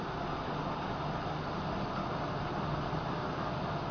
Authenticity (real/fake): real